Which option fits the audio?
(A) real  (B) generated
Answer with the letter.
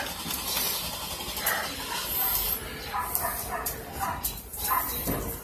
A